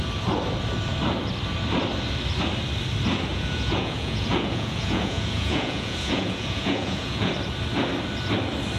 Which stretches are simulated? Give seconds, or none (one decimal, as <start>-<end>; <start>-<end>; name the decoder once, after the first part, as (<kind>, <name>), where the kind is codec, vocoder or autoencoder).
3.3-7.3 (vocoder, Vocos)